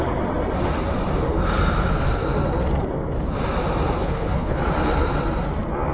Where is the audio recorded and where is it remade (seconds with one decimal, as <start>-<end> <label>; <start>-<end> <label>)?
0.0-4.0 recorded; 4.0-4.6 remade; 4.6-5.9 recorded